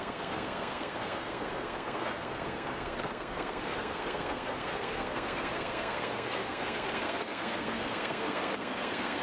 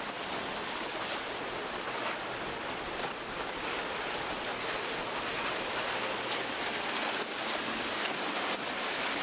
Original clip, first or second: second